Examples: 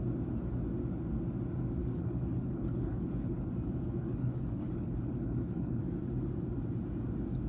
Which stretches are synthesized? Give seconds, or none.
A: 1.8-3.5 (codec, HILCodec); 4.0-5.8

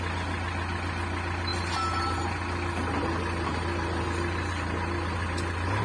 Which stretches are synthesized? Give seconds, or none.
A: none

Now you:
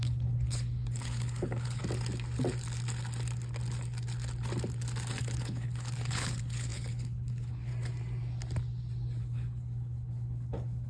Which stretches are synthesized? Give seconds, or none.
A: 0.0-1.8 (codec, HILCodec); 5.2-7.7; 9.2-10.9

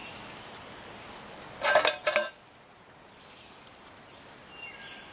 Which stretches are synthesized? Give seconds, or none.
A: none

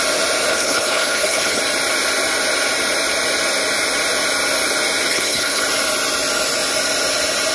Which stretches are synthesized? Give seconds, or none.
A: 0.5-1.6 (codec, HILCodec); 5.1-5.6

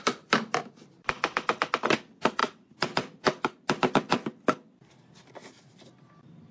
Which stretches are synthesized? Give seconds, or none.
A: none

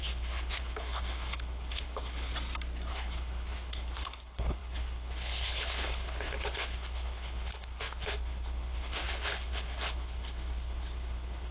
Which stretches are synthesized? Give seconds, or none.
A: 0.0-2.3 (codec, HILCodec); 2.9-11.5